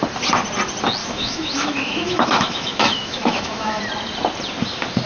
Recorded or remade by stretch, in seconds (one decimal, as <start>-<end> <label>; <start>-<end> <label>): 0.0-1.0 recorded; 1.0-3.8 remade; 3.8-5.1 recorded